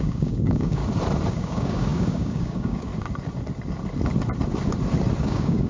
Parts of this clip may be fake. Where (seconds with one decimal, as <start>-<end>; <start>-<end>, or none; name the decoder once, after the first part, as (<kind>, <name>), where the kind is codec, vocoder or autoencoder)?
0.0-0.8 (codec, DAC); 1.3-2.9; 5.2-5.7

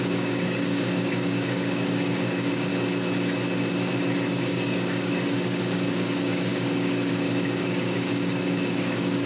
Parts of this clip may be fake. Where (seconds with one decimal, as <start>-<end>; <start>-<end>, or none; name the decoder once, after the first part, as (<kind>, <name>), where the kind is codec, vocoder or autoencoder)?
0.0-2.7 (codec, DAC); 4.4-9.3

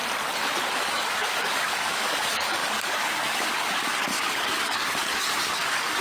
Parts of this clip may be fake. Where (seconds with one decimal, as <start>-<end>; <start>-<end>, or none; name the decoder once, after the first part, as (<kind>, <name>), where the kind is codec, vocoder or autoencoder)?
0.7-6.0 (codec, DAC)

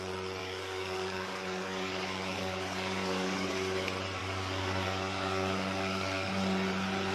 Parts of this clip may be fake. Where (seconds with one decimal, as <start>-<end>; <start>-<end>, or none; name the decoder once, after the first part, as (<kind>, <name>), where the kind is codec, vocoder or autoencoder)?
0.4-3.5 (codec, DAC); 4.2-6.3

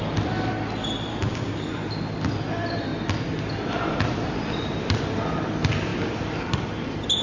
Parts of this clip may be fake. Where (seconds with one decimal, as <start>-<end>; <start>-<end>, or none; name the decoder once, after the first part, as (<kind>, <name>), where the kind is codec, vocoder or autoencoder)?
1.1-1.6 (codec, DAC)

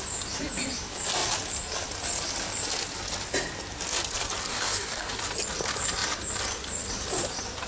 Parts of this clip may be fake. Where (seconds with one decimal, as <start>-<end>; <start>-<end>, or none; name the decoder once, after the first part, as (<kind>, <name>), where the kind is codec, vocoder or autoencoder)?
4.5-5.2 (codec, DAC)

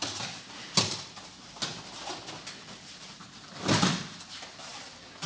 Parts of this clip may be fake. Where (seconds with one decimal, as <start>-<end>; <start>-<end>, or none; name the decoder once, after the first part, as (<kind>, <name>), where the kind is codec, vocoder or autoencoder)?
none